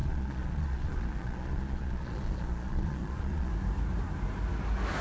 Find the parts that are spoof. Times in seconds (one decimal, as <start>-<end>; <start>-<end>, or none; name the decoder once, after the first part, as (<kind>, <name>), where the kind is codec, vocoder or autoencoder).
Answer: 0.0-3.5 (vocoder, Vocos)